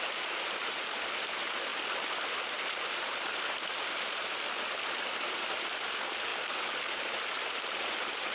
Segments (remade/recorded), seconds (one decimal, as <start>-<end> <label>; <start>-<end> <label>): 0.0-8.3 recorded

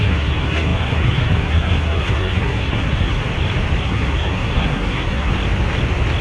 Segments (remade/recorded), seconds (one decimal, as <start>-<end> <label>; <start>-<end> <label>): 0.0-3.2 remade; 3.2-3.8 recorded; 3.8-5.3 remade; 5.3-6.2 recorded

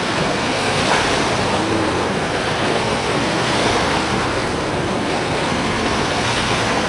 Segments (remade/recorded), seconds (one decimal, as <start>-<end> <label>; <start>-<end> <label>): 0.0-0.8 remade; 0.8-1.5 recorded; 1.5-6.9 remade

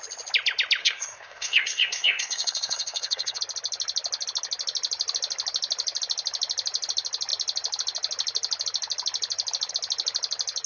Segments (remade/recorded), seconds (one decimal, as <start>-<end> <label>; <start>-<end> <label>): 0.0-0.8 recorded; 0.8-3.4 remade; 3.4-10.7 recorded